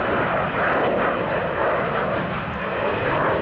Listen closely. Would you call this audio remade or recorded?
recorded